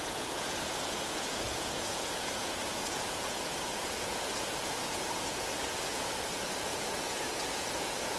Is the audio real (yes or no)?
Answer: no